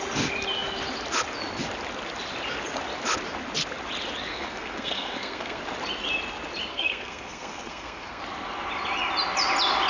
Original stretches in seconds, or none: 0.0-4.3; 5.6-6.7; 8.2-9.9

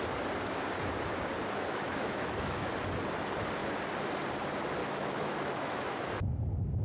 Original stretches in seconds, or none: 0.0-1.4; 2.7-4.8; 6.1-6.8